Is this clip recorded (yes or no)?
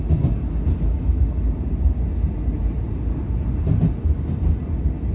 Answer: yes